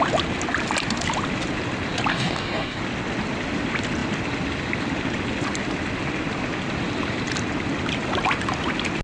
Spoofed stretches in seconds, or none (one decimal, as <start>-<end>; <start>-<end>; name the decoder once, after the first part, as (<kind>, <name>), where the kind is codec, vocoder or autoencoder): 2.1-2.8 (codec, DAC)